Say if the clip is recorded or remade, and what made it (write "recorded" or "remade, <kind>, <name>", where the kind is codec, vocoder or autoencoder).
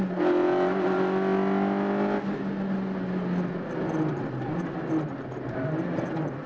recorded